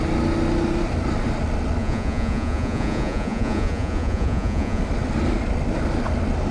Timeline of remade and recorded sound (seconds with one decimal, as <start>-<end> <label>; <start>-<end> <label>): 0.0-1.8 recorded; 1.8-4.8 remade; 4.8-6.5 recorded